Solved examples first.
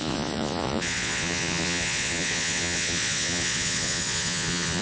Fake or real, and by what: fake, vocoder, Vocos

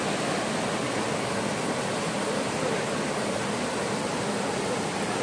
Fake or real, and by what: real